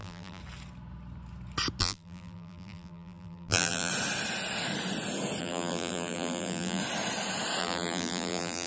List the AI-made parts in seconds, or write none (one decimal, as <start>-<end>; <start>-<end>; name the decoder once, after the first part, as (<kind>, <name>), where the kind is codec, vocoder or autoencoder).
0.0-0.4 (vocoder, BigVGAN v2); 1.8-3.9; 5.4-6.8; 7.6-8.7